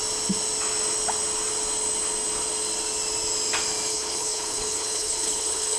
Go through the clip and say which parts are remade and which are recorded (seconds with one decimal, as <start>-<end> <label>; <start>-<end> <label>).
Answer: 0.0-3.9 recorded; 3.9-5.8 remade